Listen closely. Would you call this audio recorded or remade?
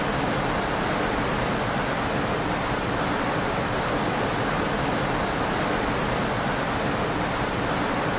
recorded